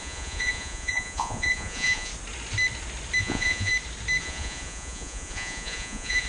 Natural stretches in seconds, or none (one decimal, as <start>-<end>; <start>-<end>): 2.1-3.2; 3.7-4.2